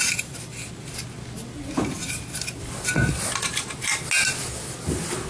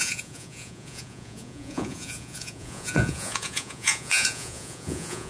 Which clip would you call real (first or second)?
first